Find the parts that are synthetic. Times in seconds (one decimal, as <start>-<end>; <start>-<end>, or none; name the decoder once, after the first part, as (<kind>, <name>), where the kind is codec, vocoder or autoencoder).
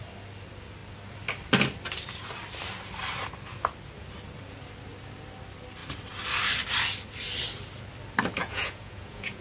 8.4-9.4 (vocoder, Vocos)